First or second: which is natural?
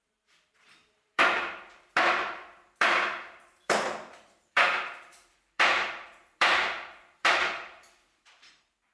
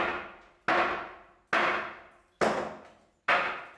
second